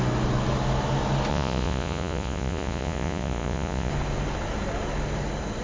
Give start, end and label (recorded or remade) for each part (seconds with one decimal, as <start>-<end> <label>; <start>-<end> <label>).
0.0-1.3 recorded; 1.3-3.9 remade; 3.9-5.6 recorded